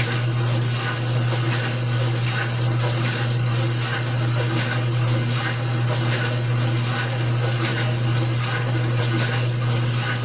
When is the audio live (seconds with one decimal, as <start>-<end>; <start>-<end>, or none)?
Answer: 0.0-10.2